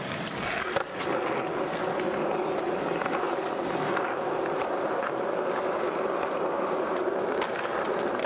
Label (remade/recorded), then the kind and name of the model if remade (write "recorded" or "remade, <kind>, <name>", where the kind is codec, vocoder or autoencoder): recorded